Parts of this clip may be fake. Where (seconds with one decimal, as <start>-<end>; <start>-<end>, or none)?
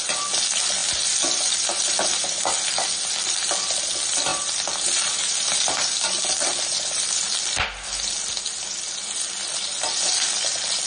none